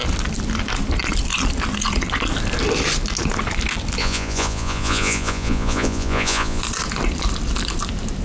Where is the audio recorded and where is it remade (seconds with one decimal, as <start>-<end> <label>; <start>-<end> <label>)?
0.0-4.0 recorded; 4.0-6.6 remade; 6.6-8.2 recorded